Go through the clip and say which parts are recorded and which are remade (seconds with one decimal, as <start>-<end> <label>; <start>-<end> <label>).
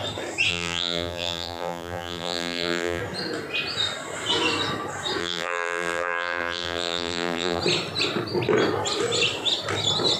0.0-0.5 recorded; 0.5-3.0 remade; 3.0-5.2 recorded; 5.2-7.6 remade; 7.6-10.2 recorded